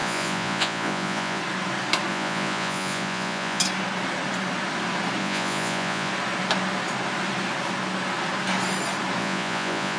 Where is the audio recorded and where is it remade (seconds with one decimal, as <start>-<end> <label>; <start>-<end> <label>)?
0.0-1.4 remade; 1.4-2.1 recorded; 2.1-3.6 remade; 3.6-5.2 recorded; 5.2-6.1 remade; 6.1-9.2 recorded; 9.2-10.0 remade